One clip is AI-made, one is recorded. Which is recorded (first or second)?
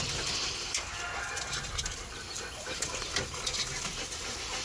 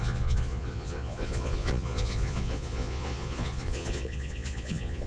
first